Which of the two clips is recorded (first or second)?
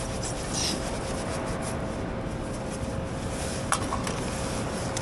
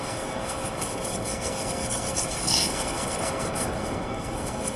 first